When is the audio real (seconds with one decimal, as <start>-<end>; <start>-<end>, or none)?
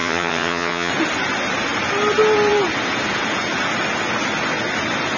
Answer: 0.9-5.2